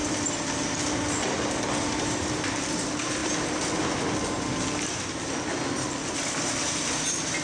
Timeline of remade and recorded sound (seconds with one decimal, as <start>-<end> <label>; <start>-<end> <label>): 0.0-7.4 recorded